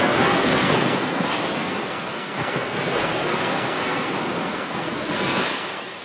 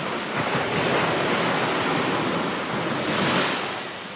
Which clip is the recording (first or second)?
second